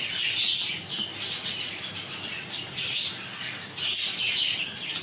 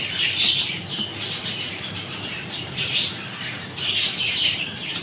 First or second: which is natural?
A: first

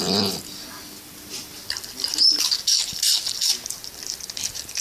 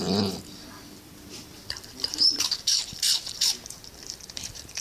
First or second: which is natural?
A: first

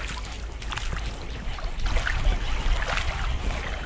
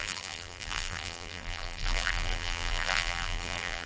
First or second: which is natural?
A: first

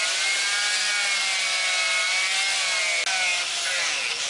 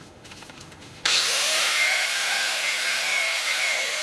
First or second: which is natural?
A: first